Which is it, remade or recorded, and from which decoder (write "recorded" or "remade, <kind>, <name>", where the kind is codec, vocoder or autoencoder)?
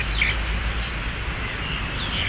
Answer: recorded